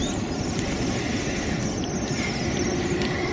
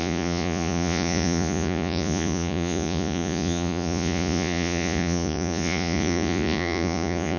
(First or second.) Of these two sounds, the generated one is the second